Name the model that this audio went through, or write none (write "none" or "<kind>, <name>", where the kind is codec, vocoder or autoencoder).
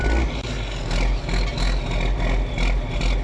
none